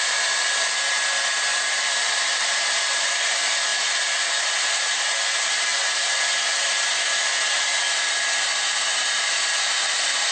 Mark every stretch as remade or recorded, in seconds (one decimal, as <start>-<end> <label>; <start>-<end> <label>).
0.0-1.5 recorded; 1.5-2.7 remade; 2.7-3.7 recorded; 3.7-4.3 remade; 4.3-10.3 recorded

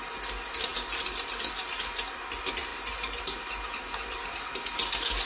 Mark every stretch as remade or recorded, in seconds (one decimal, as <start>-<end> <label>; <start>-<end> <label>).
0.0-2.7 recorded; 2.7-4.3 remade; 4.3-5.3 recorded

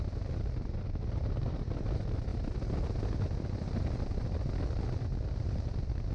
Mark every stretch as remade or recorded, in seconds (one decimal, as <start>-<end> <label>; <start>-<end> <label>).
0.0-6.1 recorded

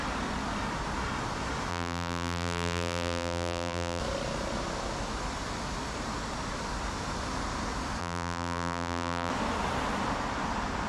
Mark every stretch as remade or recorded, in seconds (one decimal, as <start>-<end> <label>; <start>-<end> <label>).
0.0-1.7 recorded; 1.7-4.0 remade; 4.0-8.0 recorded; 8.0-9.3 remade; 9.3-10.9 recorded